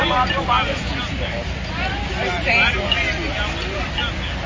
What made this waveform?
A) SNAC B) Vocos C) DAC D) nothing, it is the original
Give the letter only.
D